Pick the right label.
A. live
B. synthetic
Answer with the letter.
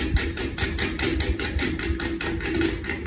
A